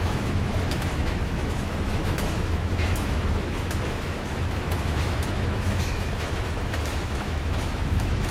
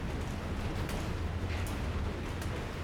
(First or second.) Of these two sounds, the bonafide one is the second